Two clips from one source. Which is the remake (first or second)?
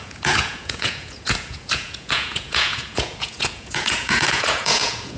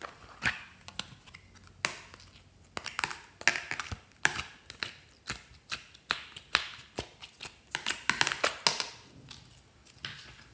first